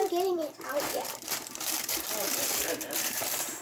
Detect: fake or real fake